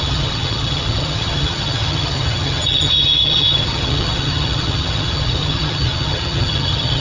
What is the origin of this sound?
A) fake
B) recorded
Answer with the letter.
A